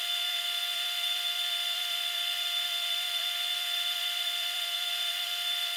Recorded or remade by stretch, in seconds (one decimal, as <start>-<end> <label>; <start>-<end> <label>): 0.0-5.8 remade